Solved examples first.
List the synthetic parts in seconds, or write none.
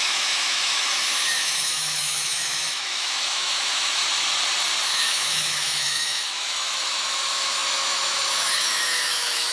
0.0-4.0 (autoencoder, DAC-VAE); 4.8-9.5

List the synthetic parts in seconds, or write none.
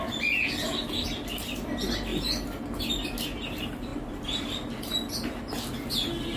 none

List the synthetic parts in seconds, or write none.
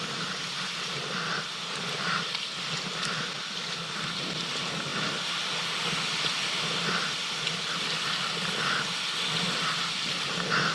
none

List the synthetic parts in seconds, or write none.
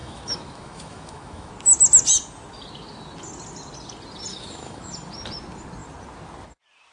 0.0-1.5 (autoencoder, DAC-VAE); 4.3-4.9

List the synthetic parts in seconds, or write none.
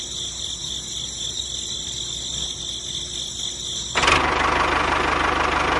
none